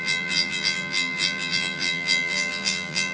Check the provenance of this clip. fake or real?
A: fake